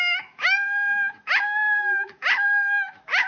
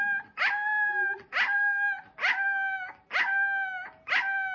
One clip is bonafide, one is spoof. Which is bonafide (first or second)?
second